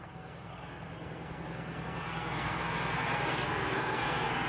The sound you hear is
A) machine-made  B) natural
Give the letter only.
A